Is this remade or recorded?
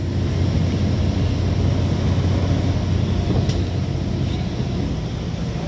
recorded